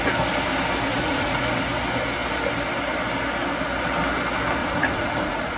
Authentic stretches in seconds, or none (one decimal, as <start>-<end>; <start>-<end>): 0.0-0.9; 1.4-4.6